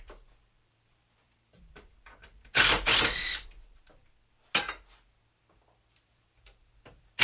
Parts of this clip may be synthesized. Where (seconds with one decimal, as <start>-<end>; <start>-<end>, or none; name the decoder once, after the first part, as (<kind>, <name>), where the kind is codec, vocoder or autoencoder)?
0.0-4.0 (vocoder, BigVGAN v2); 5.9-7.2